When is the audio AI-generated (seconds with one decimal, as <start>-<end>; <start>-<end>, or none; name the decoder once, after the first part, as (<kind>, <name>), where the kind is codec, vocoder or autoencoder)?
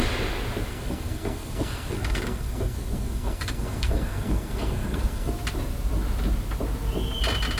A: 0.7-5.3 (codec, SNAC)